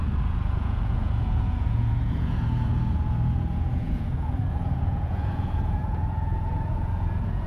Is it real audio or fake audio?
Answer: fake